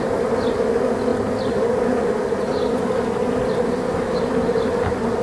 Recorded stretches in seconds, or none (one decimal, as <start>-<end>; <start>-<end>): 0.0-5.2